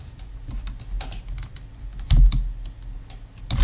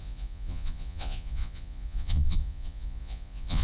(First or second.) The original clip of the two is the first